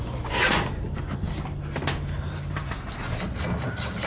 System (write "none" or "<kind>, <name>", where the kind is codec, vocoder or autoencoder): vocoder, BigVGAN v2